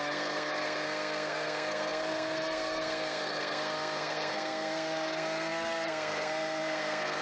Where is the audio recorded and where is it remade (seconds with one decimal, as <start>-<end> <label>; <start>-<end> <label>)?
0.0-7.2 remade